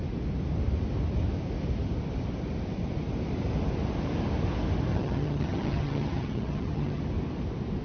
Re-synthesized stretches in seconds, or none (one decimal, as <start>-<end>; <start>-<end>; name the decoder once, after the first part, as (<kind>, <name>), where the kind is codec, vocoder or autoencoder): 4.9-7.0 (vocoder, HiFi-GAN)